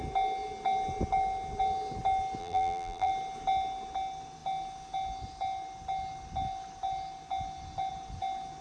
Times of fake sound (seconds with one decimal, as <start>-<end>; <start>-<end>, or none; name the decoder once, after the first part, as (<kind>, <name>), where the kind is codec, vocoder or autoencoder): 2.4-3.1 (vocoder, BigVGAN v2)

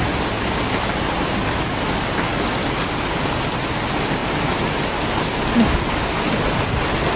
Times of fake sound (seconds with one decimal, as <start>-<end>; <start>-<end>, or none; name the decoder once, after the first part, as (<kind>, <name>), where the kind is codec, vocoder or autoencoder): 2.3-3.4 (vocoder, BigVGAN v2); 4.2-4.9